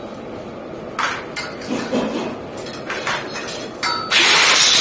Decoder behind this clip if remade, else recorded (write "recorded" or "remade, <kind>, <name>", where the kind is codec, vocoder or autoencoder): recorded